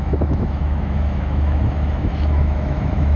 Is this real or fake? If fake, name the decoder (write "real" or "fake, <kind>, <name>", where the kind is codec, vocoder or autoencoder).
fake, autoencoder, DAC-VAE